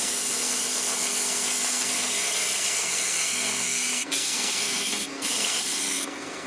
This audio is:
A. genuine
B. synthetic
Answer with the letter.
B